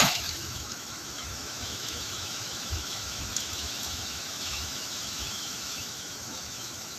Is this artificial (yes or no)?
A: yes